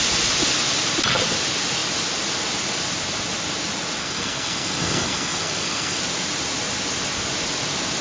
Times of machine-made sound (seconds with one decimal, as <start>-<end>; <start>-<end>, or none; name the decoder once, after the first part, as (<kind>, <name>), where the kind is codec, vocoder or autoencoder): 4.0-6.0 (codec, SNAC)

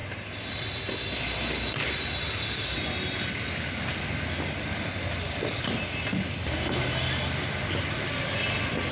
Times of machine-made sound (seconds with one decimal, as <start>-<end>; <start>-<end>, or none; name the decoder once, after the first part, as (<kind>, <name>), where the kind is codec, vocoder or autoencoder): none

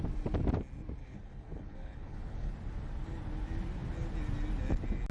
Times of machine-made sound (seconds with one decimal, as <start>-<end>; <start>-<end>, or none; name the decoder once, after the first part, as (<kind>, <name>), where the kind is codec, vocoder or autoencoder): 1.0-2.5 (codec, HILCodec)

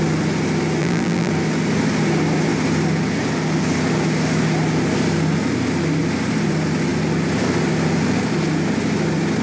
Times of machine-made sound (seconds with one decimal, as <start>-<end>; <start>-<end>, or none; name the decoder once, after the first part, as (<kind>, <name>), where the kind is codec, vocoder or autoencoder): 0.8-1.3 (vocoder, BigVGAN v2)